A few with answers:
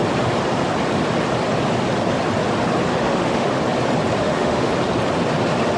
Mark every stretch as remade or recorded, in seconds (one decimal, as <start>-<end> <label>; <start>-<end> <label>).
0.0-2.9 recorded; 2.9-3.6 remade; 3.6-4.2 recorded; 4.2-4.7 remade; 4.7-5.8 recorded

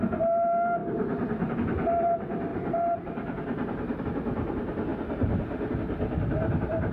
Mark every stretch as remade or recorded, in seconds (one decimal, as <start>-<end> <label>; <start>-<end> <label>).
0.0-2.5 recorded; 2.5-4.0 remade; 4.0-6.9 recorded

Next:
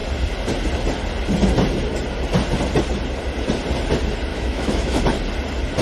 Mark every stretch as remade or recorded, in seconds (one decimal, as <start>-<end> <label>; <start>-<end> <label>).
0.0-4.3 recorded; 4.3-5.0 remade; 5.0-5.8 recorded